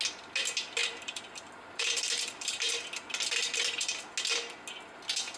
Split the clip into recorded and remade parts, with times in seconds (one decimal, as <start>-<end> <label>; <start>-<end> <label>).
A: 0.0-0.8 recorded; 0.8-4.0 remade; 4.0-5.4 recorded